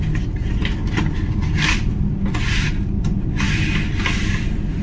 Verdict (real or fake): real